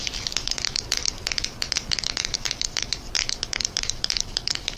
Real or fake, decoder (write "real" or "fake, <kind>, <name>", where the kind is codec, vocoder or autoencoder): fake, vocoder, BigVGAN v2